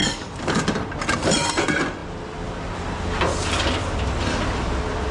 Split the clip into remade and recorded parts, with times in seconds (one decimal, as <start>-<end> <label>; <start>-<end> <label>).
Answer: 0.0-0.6 remade; 0.6-5.1 recorded